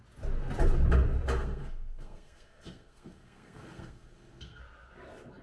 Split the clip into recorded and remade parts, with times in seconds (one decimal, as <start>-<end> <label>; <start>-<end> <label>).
0.0-1.4 recorded; 1.4-4.6 remade; 4.6-5.4 recorded